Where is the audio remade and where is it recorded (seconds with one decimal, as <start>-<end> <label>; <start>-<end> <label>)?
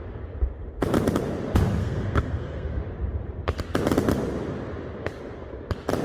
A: 0.0-1.8 recorded; 1.8-2.8 remade; 2.8-6.0 recorded